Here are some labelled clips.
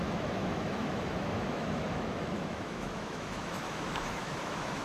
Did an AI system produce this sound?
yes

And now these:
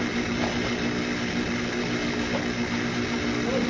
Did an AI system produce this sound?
no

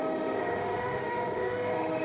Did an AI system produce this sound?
yes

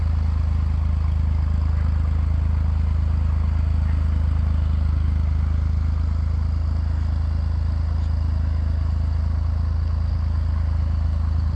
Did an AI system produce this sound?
no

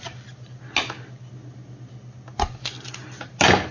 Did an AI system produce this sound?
no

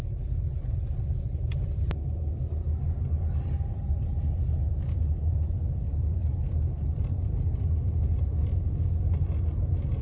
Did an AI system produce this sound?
no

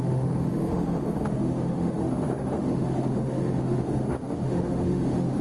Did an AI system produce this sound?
yes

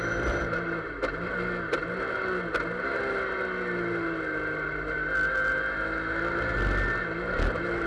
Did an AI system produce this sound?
no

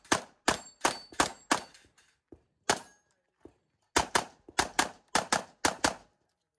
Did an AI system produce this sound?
no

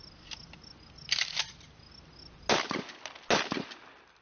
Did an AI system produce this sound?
no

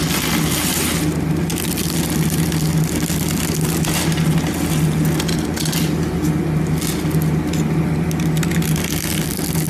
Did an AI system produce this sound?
no